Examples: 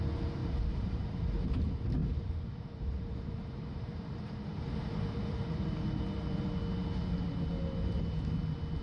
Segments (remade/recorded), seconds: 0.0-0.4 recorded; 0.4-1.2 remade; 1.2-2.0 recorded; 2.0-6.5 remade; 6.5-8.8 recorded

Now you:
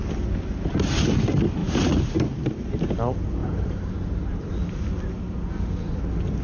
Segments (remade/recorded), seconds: 0.0-1.6 recorded; 1.6-2.9 remade; 2.9-3.4 recorded; 3.4-4.5 remade; 4.5-6.4 recorded

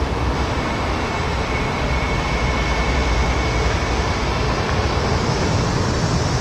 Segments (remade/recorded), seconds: 0.0-6.4 recorded

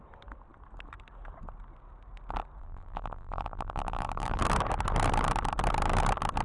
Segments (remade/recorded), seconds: 0.0-2.6 recorded; 2.6-4.4 remade; 4.4-6.4 recorded

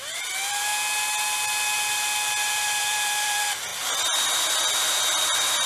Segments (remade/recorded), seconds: 0.0-0.7 remade; 0.7-2.5 recorded; 2.5-3.7 remade; 3.7-5.2 recorded; 5.2-5.7 remade

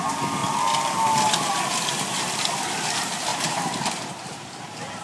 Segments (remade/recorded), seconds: 0.0-3.3 recorded; 3.3-4.6 remade; 4.6-5.0 recorded

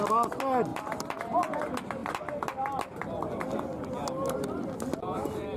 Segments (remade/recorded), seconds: 0.0-0.7 recorded; 0.7-1.2 remade; 1.2-5.6 recorded